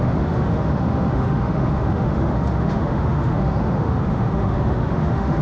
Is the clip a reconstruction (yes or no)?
yes